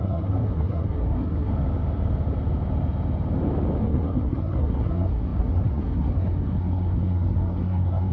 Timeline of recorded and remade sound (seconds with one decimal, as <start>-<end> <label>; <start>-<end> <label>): 0.0-1.5 remade; 1.5-3.8 recorded; 3.8-8.1 remade